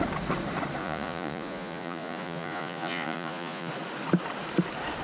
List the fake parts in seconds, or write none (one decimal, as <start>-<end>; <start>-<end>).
0.8-3.7